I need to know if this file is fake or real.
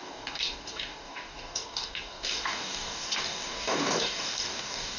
fake